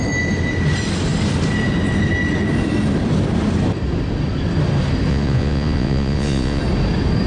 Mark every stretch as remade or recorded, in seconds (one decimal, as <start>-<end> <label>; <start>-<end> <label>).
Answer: 0.0-5.1 recorded; 5.1-6.6 remade; 6.6-7.3 recorded

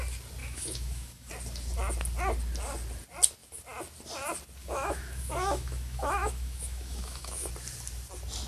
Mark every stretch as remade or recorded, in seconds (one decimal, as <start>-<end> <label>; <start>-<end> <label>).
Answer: 0.0-0.4 recorded; 0.4-1.3 remade; 1.3-4.6 recorded; 4.6-7.5 remade; 7.5-8.5 recorded

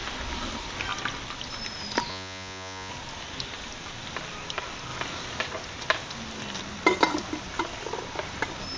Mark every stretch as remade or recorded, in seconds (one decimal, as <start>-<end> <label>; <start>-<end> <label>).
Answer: 0.0-2.1 recorded; 2.1-2.9 remade; 2.9-8.8 recorded

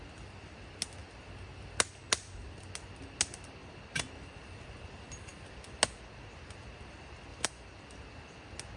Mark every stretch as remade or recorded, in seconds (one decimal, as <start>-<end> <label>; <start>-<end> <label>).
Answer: 0.0-3.6 recorded; 3.6-4.6 remade; 4.6-7.3 recorded; 7.3-8.0 remade; 8.0-8.8 recorded